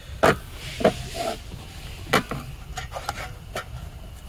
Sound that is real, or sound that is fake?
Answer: real